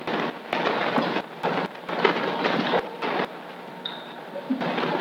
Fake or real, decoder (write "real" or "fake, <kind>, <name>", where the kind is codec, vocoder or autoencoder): real